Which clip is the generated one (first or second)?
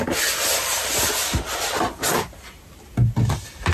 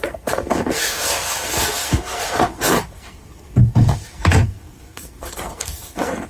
second